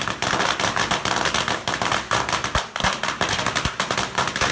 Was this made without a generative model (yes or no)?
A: yes